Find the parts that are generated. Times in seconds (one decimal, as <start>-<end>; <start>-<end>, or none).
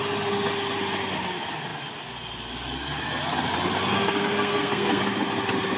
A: 3.9-5.0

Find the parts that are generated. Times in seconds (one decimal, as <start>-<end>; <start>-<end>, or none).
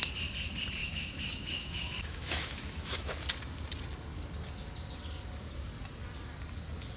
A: 0.8-3.1